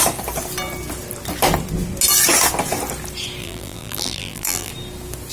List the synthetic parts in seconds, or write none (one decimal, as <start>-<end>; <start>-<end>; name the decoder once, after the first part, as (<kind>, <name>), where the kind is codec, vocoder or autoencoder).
3.4-4.7 (vocoder, BigVGAN v2)